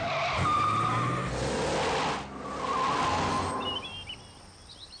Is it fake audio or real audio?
real